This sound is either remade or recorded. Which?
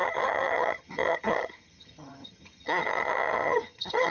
remade